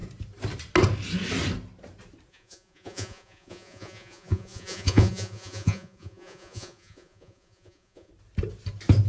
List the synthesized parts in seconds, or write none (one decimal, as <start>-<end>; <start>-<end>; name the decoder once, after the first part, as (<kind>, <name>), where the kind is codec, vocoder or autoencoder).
2.3-8.1 (vocoder, Vocos)